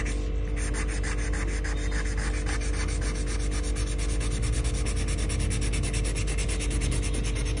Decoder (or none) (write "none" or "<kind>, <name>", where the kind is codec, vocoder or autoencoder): none